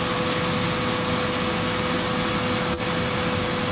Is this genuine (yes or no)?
yes